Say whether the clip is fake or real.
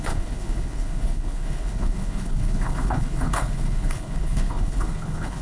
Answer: fake